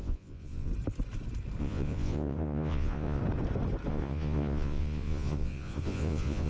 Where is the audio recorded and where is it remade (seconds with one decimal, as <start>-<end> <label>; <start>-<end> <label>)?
0.0-0.7 remade; 0.7-1.6 recorded; 1.6-3.2 remade; 3.2-3.9 recorded; 3.9-6.5 remade